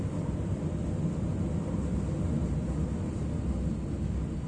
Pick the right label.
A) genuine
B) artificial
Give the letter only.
A